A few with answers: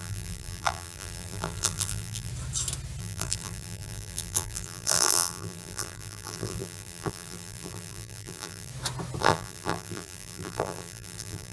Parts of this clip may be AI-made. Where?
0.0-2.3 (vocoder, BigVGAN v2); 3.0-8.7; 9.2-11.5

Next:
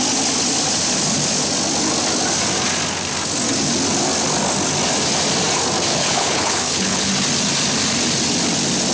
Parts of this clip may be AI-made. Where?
5.9-7.1 (codec, HILCodec)

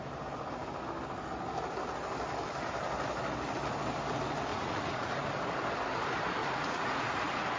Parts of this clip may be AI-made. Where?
4.5-5.1 (vocoder, Vocos); 6.4-7.6

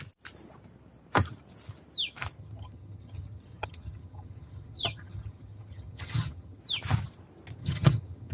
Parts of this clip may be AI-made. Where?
2.4-6.6 (vocoder, HiFi-GAN); 7.6-8.3